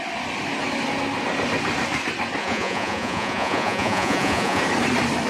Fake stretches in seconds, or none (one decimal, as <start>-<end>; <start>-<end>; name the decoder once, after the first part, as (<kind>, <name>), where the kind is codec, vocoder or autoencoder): 2.4-4.6 (vocoder, Vocos)